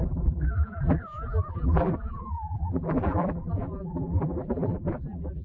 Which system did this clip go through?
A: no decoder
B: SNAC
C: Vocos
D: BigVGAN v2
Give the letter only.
D